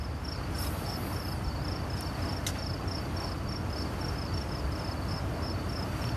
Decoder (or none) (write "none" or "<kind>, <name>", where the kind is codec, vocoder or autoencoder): none